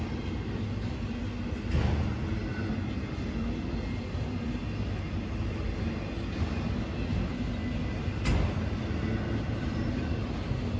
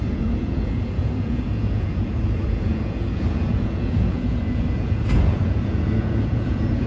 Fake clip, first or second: second